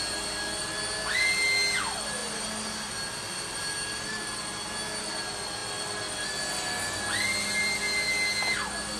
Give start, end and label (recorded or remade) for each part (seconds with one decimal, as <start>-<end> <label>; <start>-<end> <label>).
0.0-9.0 recorded